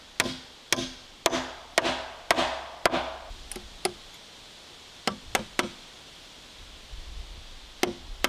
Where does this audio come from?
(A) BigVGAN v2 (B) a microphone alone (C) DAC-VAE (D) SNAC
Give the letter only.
B